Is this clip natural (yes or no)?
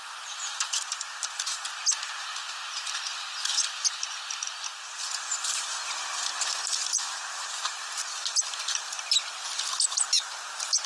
yes